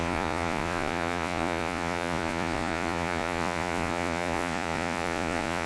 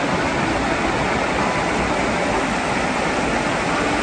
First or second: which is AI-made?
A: first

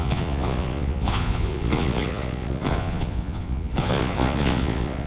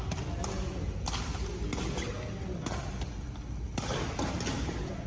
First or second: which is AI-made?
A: first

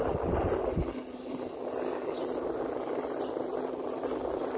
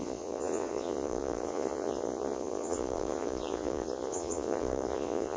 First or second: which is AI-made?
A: second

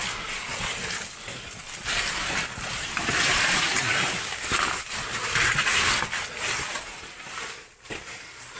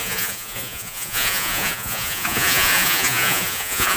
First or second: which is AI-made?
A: second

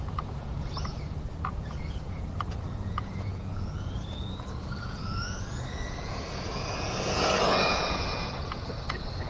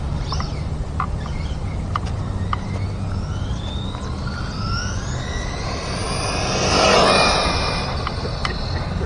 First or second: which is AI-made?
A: first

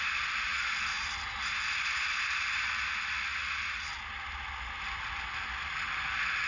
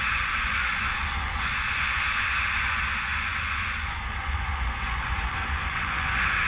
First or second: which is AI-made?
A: second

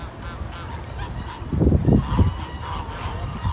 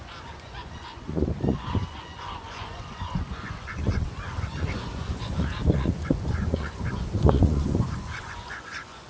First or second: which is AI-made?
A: second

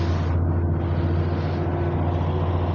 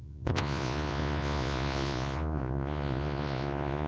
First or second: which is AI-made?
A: second